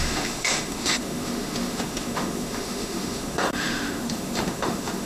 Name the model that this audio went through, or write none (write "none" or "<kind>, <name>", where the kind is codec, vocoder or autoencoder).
autoencoder, DAC-VAE